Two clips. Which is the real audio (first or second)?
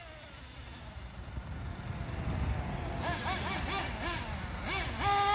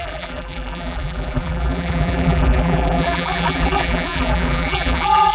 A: first